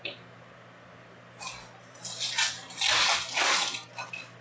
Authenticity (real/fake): real